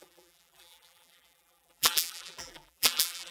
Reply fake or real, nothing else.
fake